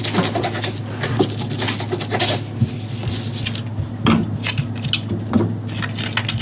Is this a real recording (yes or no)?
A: yes